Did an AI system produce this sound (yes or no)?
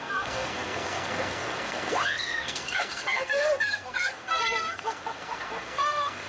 yes